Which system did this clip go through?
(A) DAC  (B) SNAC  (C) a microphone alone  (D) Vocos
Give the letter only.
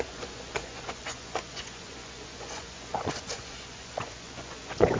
D